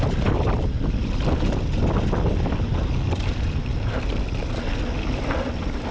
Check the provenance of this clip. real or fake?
real